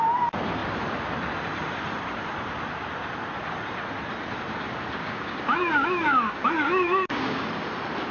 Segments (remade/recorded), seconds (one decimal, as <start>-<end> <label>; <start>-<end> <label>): 0.0-5.0 recorded; 5.0-7.5 remade; 7.5-8.1 recorded